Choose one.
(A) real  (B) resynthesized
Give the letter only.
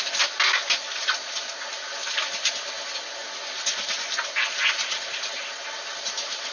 A